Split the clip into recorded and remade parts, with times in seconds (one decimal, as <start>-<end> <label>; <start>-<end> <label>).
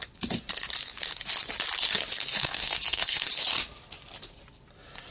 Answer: 0.0-2.4 recorded; 2.4-3.3 remade; 3.3-5.1 recorded